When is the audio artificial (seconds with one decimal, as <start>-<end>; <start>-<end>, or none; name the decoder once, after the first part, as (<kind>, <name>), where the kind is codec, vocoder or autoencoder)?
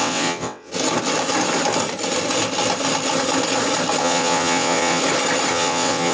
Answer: 0.0-0.7 (vocoder, WaveNeXt); 4.0-5.0; 5.5-6.1